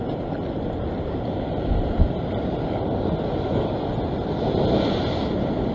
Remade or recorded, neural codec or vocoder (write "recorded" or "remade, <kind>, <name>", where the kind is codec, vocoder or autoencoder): recorded